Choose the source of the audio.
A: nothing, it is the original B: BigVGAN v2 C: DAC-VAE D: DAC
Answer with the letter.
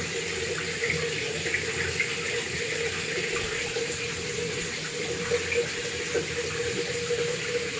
A